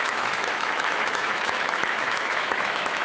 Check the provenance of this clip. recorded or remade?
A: remade